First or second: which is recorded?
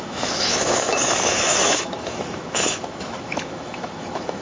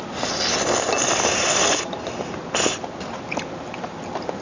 second